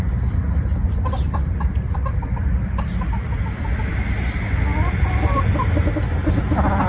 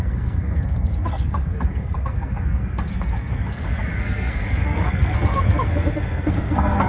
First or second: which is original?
first